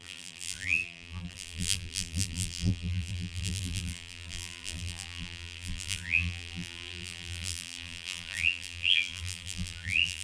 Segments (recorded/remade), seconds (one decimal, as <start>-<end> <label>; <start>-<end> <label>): 0.0-10.2 remade